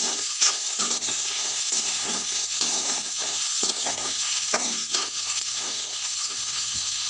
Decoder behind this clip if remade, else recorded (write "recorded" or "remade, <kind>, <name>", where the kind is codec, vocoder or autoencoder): remade, codec, SNAC